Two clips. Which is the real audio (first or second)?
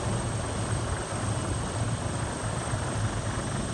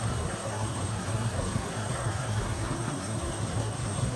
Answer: first